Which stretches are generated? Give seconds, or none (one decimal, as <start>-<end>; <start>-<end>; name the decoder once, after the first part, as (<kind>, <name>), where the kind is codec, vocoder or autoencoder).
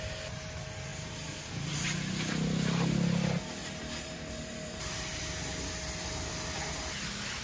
0.9-1.5 (vocoder, BigVGAN v2); 3.6-5.2